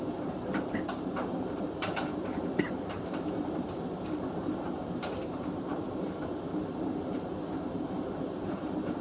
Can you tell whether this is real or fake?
fake